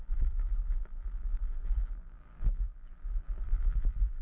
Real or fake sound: fake